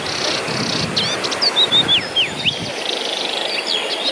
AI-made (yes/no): no